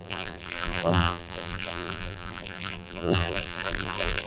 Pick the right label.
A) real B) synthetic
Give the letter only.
B